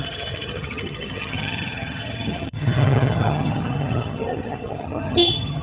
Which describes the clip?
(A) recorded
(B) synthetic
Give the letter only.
B